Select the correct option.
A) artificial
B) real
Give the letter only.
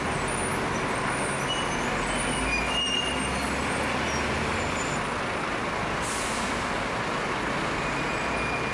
B